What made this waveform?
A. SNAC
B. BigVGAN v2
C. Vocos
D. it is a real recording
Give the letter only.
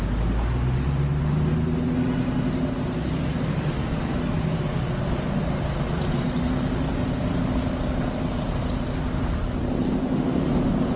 D